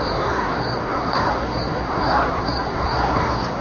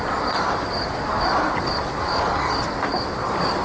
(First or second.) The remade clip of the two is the first